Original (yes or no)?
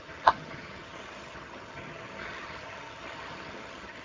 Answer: no